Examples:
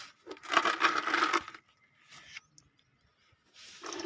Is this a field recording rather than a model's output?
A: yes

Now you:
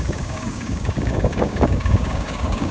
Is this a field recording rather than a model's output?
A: no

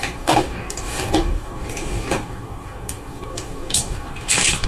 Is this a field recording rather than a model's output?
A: no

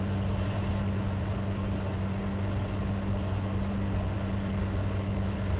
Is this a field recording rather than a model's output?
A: yes